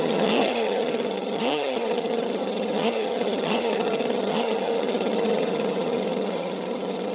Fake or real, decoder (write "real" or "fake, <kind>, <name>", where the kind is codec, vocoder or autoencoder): fake, vocoder, HiFi-GAN